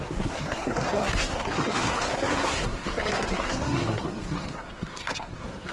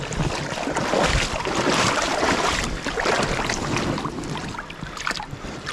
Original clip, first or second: second